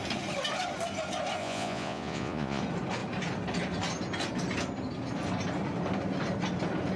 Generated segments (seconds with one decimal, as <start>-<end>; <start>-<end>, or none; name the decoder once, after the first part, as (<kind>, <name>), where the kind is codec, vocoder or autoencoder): 1.4-2.6 (vocoder, Vocos)